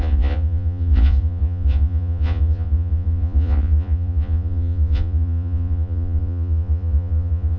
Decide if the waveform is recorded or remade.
remade